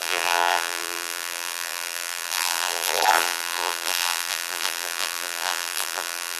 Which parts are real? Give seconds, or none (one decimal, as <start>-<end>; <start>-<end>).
none